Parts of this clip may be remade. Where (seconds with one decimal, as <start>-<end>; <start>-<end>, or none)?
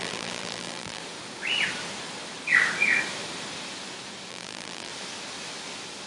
0.0-1.0; 4.3-4.9